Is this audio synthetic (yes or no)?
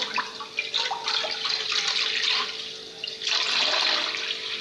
no